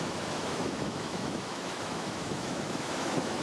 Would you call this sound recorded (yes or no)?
no